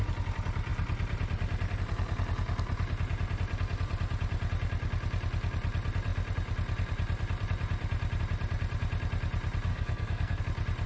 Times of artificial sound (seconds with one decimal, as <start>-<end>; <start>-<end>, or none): 9.7-10.4